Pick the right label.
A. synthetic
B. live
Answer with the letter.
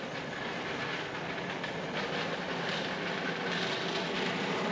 B